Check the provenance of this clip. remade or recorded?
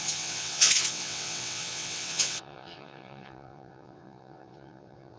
remade